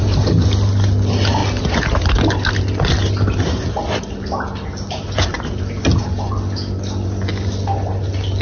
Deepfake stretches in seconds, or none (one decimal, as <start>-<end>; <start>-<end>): none